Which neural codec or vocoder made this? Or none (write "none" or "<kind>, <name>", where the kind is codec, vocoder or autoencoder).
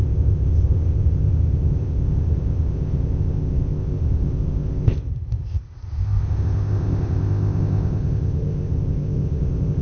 codec, ZipCodec